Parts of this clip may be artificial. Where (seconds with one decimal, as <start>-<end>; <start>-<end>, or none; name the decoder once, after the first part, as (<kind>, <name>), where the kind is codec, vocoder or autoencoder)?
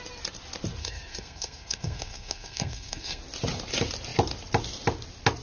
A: 0.8-3.2 (codec, SNAC)